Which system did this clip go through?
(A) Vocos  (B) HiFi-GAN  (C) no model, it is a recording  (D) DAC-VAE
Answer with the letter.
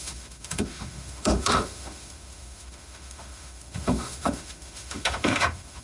D